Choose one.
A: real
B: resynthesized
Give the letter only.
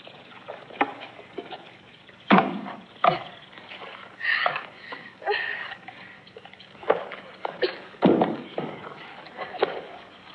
B